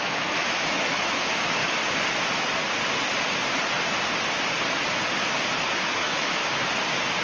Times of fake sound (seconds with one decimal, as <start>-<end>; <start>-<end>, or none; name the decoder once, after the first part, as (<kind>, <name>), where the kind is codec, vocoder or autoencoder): 0.0-1.6 (autoencoder, DAC-VAE); 5.6-6.4